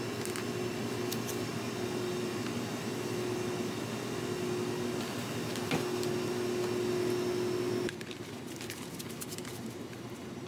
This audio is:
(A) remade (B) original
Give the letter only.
B